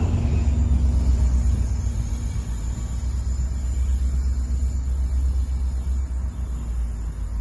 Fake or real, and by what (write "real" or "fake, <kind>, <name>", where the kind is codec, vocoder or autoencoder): real